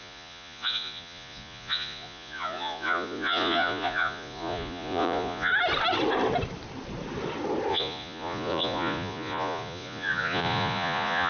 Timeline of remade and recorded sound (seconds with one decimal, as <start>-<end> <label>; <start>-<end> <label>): 0.0-5.5 remade; 5.5-7.7 recorded; 7.7-11.3 remade